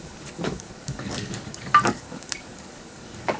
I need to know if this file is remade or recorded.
remade